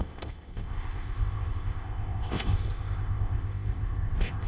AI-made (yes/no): yes